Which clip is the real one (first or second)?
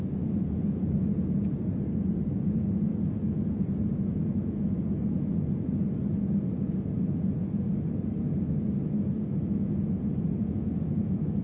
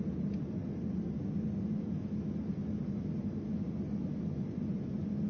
second